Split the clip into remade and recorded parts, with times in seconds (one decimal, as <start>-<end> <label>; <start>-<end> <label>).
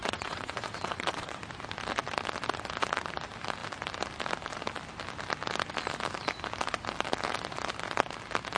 0.0-1.4 remade; 1.4-8.6 recorded